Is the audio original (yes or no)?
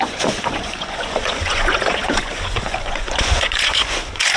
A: no